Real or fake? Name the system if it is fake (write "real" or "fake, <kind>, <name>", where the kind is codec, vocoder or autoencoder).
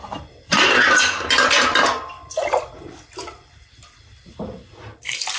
real